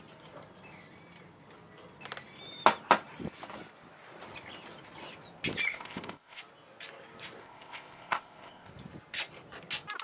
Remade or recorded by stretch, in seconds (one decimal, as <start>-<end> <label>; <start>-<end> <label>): 0.0-5.7 recorded; 5.7-6.4 remade; 6.4-7.4 recorded; 7.4-8.7 remade; 8.7-10.0 recorded